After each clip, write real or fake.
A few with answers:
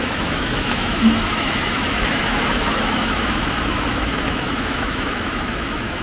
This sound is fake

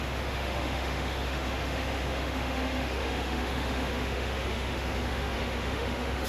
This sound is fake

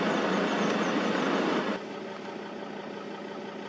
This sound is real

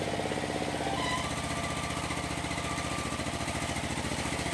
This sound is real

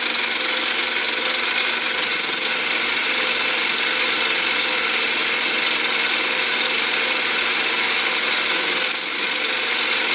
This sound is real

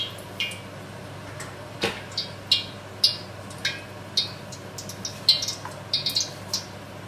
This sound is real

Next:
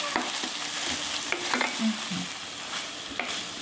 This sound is real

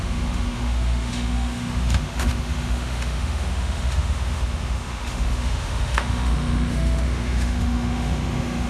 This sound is fake